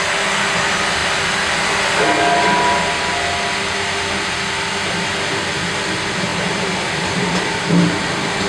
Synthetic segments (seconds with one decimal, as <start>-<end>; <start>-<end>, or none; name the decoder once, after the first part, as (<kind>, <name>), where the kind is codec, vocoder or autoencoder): 6.3-8.1 (vocoder, BigVGAN v2)

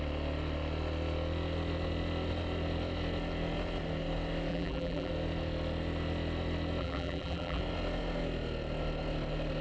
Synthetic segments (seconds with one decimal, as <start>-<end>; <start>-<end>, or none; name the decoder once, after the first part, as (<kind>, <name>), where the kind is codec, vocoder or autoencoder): 4.5-5.1 (vocoder, BigVGAN v2); 6.8-7.6

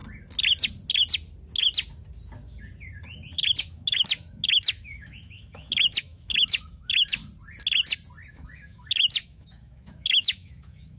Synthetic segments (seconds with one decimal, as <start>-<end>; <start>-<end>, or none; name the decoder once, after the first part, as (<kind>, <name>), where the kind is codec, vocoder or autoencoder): 3.6-7.2 (autoencoder, DAC-VAE); 8.3-11.0